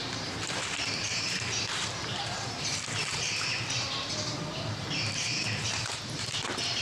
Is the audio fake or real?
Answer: fake